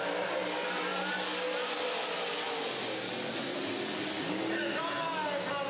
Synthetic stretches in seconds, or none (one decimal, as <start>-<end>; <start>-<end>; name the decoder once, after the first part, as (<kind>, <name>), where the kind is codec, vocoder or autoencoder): none